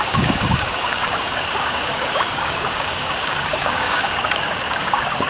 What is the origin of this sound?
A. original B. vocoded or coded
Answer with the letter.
B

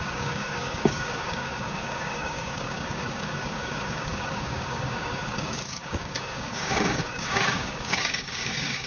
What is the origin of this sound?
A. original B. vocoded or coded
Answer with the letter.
B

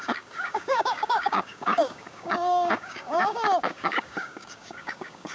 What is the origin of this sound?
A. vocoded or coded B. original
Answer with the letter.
A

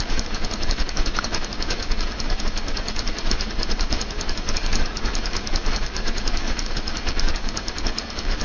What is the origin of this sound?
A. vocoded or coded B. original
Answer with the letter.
A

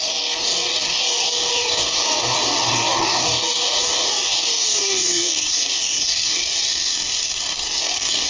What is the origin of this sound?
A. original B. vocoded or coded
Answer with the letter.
B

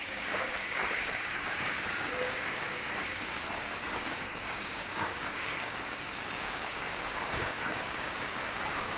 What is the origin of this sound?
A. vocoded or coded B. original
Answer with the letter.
A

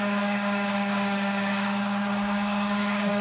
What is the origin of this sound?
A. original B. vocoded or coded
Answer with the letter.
B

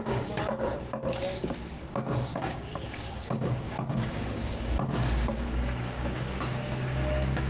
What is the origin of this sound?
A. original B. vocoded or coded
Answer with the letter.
B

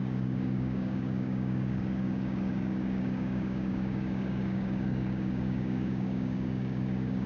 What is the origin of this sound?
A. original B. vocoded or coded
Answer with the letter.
B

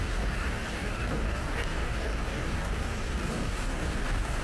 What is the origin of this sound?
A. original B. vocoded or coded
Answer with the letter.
B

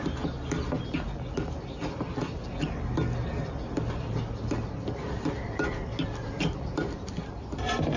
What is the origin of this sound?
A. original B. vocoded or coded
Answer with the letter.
A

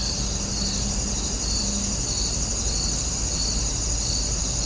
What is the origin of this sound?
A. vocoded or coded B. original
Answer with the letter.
B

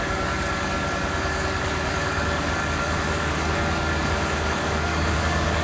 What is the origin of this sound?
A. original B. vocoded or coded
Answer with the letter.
B